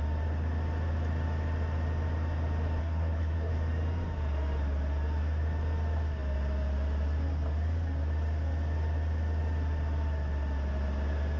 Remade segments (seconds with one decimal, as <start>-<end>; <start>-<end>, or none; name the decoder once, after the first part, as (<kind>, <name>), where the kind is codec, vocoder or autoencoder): 2.8-3.5 (codec, SNAC)